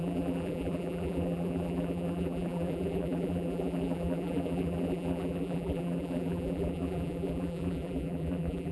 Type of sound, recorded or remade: remade